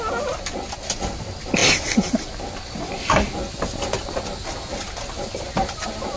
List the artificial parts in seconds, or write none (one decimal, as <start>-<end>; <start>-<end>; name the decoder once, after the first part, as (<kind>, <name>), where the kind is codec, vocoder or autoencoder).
none